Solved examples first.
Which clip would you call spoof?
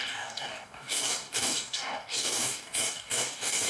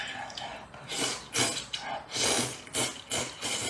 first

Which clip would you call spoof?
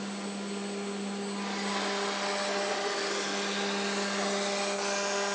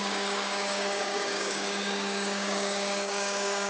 second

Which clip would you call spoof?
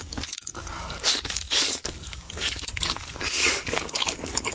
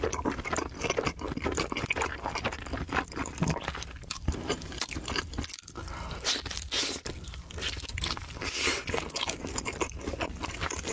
first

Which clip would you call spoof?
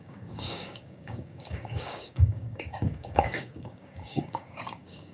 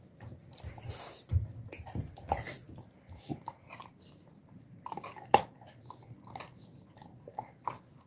first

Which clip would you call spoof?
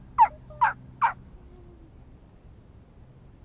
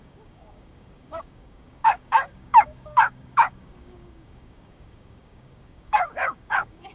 second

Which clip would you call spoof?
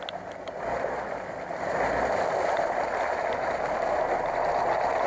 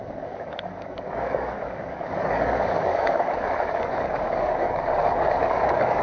second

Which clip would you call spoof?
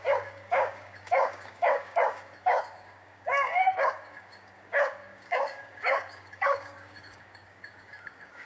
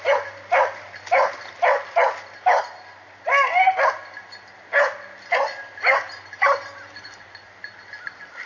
first